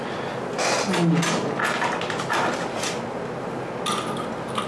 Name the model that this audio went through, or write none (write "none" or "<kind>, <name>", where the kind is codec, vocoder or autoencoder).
none